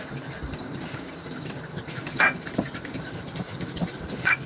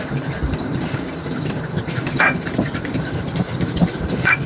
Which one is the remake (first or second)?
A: second